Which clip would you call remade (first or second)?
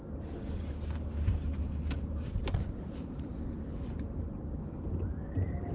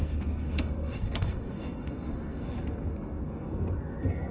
second